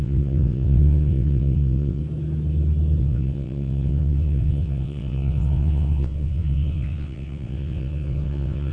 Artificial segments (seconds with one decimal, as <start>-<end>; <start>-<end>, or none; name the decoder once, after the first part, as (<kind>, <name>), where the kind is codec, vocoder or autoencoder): 0.0-2.0 (vocoder, WaveNeXt); 3.0-8.7